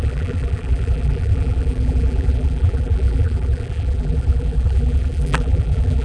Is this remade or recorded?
remade